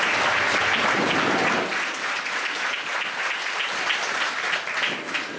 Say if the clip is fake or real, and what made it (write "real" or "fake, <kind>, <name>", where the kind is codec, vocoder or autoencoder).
real